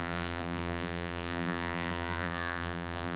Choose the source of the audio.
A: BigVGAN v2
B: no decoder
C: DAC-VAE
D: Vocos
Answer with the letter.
A